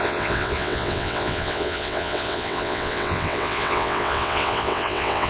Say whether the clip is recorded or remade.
remade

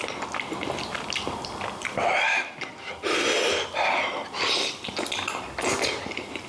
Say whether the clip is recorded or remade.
recorded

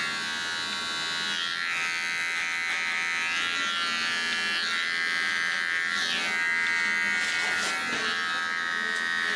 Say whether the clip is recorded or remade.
recorded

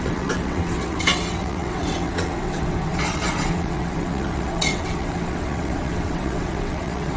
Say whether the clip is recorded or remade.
remade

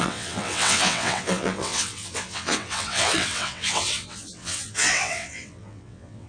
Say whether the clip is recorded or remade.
remade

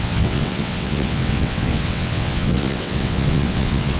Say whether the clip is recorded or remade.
remade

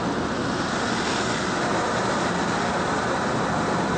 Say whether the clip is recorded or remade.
recorded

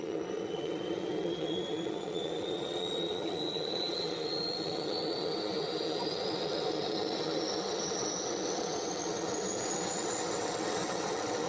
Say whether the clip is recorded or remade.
remade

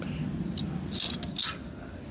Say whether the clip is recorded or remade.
recorded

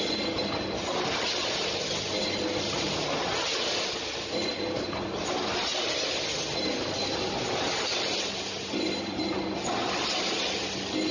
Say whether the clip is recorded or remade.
recorded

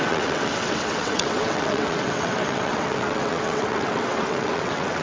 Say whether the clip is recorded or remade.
remade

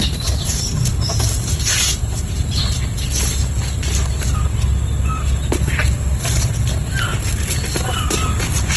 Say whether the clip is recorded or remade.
recorded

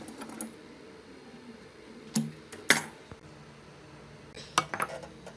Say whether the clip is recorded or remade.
recorded